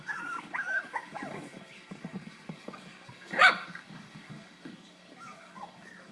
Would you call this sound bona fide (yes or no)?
no